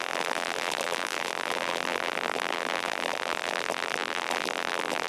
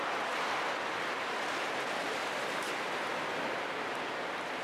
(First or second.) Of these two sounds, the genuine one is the second